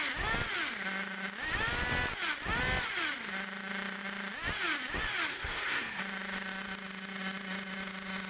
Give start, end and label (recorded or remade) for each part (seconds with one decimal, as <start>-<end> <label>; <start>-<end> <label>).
0.0-5.3 recorded; 5.3-6.0 remade; 6.0-8.3 recorded